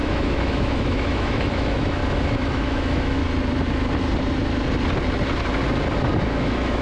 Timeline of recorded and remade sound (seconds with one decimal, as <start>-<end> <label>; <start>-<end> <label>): 0.0-2.0 remade; 2.0-2.5 recorded; 2.5-3.2 remade; 3.2-6.2 recorded; 6.2-6.8 remade